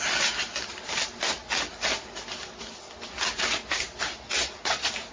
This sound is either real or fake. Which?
real